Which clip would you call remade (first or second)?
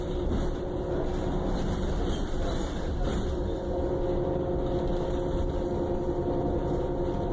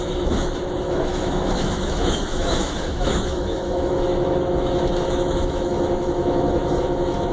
second